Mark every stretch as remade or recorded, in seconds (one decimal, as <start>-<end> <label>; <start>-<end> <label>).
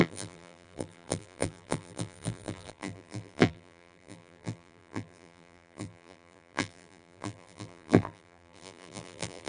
0.0-9.5 remade